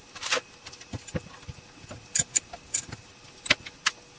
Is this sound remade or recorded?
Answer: recorded